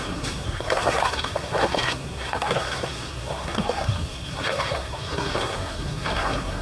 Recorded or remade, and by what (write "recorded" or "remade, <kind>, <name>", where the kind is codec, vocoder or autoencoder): remade, codec, SNAC